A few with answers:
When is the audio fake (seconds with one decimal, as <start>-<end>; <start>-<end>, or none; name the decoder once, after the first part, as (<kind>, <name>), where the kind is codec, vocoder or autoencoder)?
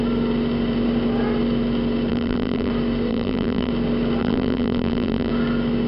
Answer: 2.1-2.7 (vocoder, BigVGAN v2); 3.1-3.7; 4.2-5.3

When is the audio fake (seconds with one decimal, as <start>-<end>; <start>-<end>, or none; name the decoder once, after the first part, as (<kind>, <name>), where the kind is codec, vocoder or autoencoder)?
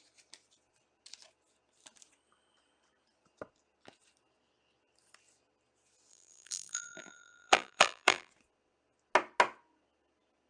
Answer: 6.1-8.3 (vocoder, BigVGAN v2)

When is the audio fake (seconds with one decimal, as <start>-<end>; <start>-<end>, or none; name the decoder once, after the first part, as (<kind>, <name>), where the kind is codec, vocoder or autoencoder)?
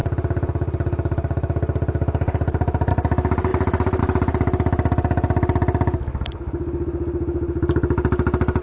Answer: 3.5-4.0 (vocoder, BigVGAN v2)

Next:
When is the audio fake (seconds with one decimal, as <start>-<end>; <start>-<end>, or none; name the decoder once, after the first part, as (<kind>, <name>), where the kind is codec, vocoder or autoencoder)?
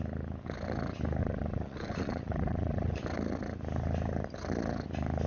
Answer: 1.2-3.0 (vocoder, Vocos)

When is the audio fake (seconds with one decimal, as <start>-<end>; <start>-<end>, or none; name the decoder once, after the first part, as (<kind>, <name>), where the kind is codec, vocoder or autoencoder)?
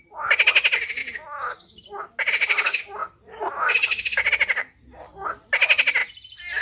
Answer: none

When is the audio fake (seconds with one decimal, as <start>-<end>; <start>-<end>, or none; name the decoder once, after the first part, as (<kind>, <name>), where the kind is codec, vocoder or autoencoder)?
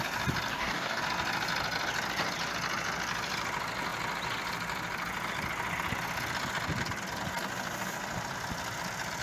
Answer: 0.5-1.0 (codec, DAC)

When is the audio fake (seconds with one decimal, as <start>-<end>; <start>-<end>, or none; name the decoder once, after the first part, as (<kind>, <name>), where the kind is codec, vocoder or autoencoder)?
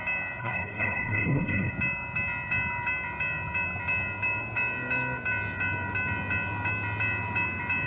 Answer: 0.4-1.7 (codec, SNAC)